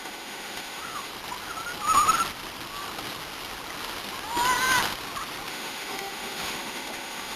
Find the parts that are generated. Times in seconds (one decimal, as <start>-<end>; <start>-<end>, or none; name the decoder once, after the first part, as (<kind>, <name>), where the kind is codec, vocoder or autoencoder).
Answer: 0.0-1.1 (autoencoder, DAC-VAE); 5.5-7.4